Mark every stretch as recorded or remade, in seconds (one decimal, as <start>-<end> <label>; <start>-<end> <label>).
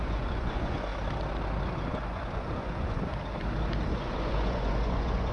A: 0.0-0.9 remade; 0.9-1.9 recorded; 1.9-3.1 remade; 3.1-3.9 recorded; 3.9-5.3 remade